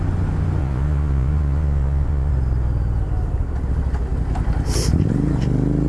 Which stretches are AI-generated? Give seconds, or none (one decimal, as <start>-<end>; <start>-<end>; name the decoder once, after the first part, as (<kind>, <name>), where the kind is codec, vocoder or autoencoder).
0.6-2.3 (vocoder, Vocos)